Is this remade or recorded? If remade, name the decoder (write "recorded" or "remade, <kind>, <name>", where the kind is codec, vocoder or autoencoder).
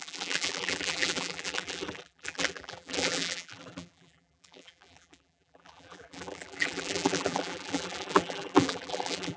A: remade, vocoder, BigVGAN v2